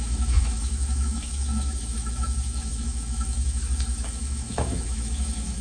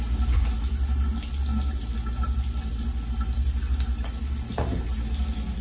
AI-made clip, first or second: first